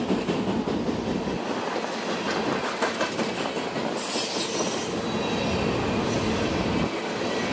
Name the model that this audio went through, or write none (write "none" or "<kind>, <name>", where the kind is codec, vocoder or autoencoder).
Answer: none